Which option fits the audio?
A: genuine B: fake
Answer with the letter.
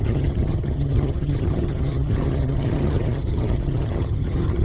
B